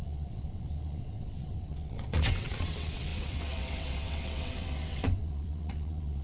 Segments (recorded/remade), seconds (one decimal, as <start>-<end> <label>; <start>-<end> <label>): 0.0-6.2 remade